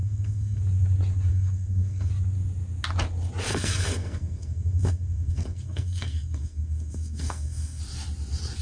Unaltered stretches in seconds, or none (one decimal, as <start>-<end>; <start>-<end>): 0.6-1.3; 2.1-3.5; 7.8-8.6